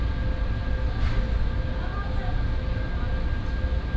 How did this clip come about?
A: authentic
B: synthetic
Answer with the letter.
A